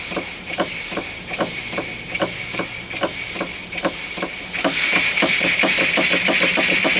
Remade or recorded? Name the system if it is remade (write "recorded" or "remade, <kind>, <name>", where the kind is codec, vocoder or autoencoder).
recorded